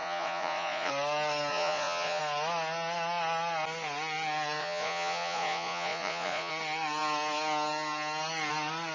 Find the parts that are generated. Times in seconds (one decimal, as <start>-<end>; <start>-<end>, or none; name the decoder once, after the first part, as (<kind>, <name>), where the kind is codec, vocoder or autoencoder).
0.0-0.9 (vocoder, Vocos); 1.5-2.2; 4.6-6.5